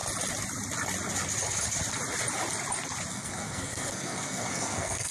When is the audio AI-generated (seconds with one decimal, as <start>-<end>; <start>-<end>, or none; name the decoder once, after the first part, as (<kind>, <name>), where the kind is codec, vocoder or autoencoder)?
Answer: 3.1-5.1 (codec, SNAC)